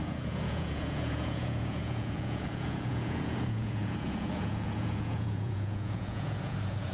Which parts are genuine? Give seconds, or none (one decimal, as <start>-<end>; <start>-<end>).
none